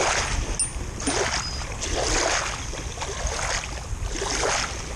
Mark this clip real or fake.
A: real